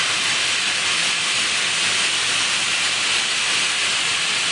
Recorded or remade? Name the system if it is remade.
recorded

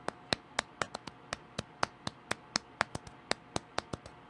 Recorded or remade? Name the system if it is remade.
recorded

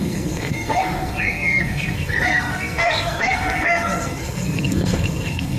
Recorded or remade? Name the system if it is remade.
remade, codec, SNAC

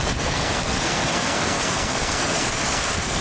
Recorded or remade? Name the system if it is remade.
remade, codec, SNAC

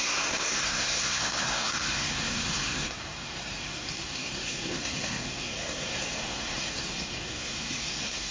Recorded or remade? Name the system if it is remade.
remade, codec, SNAC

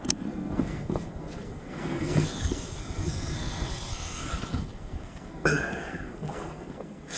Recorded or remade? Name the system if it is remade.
remade, codec, SNAC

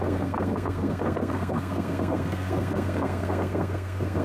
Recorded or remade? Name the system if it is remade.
remade, codec, SNAC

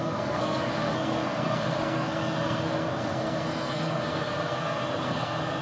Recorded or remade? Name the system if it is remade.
remade, codec, SNAC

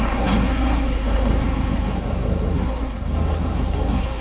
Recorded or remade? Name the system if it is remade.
remade, codec, SNAC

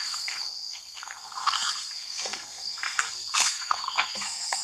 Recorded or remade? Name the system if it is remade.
remade, codec, SNAC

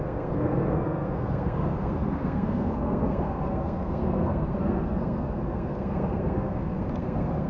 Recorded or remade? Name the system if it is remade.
remade, codec, SNAC